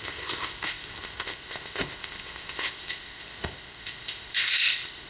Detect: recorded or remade remade